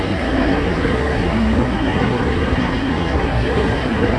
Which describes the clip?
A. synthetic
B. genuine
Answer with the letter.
A